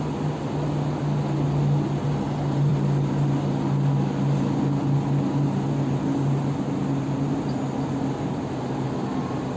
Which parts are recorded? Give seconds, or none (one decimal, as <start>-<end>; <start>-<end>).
0.0-9.6